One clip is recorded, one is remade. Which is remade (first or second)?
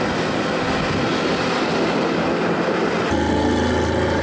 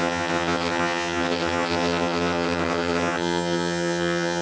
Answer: second